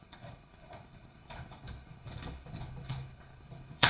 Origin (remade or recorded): remade